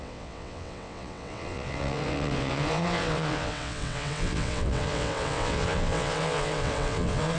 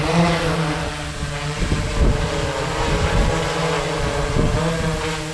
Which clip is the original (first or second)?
second